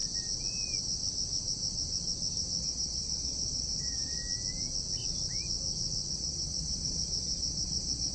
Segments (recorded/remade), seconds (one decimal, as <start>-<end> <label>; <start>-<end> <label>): 0.0-2.6 recorded; 2.6-4.2 remade; 4.2-6.1 recorded; 6.1-8.1 remade